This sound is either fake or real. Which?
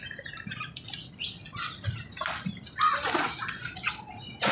real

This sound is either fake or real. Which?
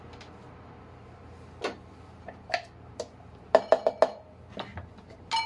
real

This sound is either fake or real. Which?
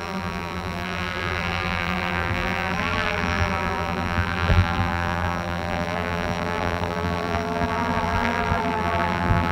fake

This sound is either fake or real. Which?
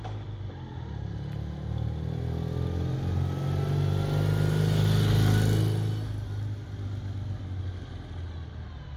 real